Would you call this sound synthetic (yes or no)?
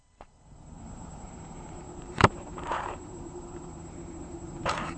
yes